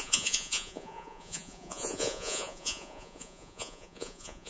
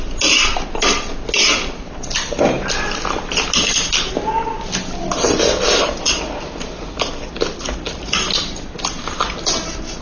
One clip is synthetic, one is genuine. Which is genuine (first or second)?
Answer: second